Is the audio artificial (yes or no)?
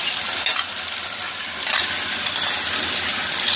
no